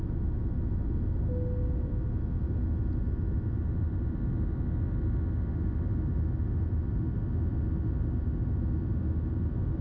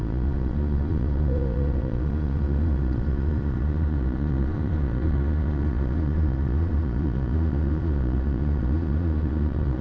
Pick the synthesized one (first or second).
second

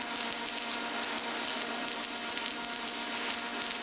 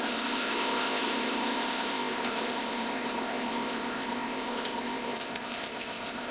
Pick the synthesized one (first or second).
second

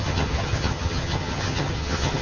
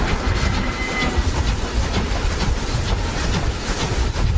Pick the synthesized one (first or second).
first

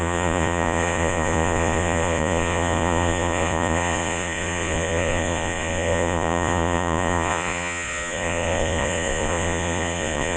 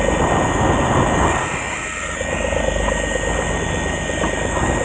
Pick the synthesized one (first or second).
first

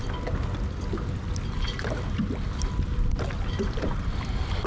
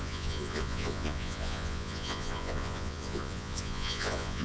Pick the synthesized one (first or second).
second